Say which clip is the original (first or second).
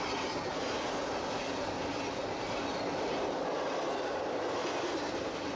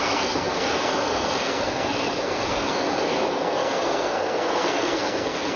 first